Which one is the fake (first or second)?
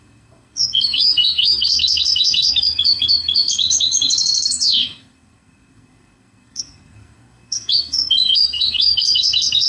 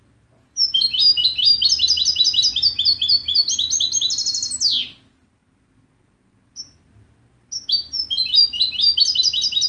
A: first